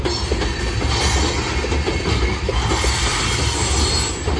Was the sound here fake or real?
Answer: real